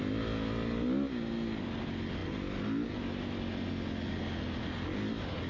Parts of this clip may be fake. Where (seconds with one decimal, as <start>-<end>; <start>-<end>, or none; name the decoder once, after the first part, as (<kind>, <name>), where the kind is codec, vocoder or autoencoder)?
none